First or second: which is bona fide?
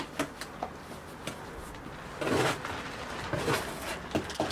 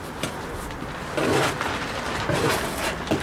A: first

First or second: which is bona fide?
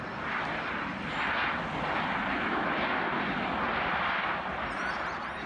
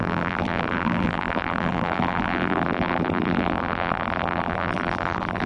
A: first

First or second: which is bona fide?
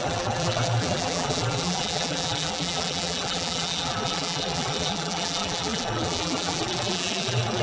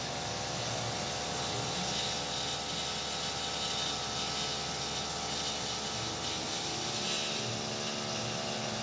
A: second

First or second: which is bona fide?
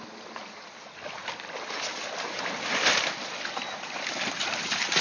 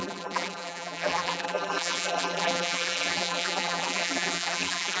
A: first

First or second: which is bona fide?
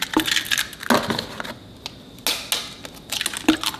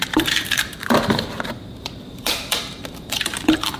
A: first